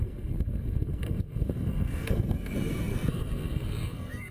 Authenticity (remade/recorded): remade